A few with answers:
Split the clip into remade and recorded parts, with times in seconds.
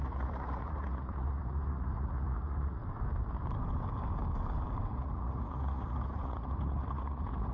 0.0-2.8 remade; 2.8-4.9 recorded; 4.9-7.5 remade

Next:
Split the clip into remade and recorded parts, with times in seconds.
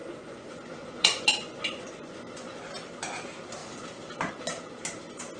0.0-2.7 remade; 2.7-5.4 recorded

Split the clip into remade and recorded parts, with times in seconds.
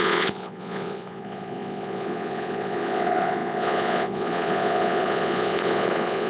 0.0-6.3 remade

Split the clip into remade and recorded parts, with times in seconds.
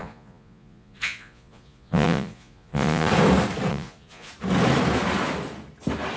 0.0-3.1 remade; 3.1-3.7 recorded; 3.7-4.3 remade; 4.3-6.2 recorded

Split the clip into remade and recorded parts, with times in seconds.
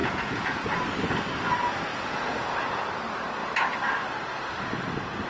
0.0-0.7 remade; 0.7-1.9 recorded; 1.9-2.9 remade; 2.9-5.3 recorded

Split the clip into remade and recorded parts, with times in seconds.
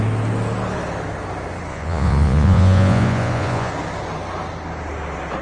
0.0-1.7 recorded; 1.7-3.7 remade; 3.7-5.4 recorded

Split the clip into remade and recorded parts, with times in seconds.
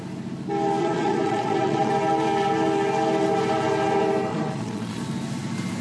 0.0-0.8 recorded; 0.8-1.9 remade; 1.9-4.3 recorded; 4.3-5.0 remade; 5.0-5.8 recorded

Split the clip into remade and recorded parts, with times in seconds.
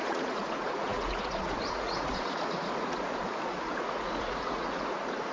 0.0-5.3 remade